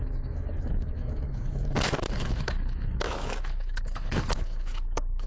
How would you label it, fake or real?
fake